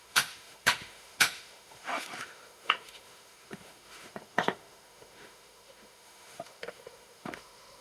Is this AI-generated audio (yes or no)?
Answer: yes